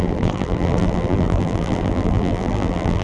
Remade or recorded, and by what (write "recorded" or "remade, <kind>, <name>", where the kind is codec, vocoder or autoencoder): remade, vocoder, BigVGAN v2